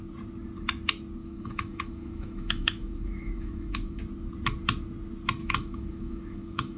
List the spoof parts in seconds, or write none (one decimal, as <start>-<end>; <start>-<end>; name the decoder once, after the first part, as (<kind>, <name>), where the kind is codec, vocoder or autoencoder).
1.2-4.0 (autoencoder, DAC-VAE); 5.4-6.8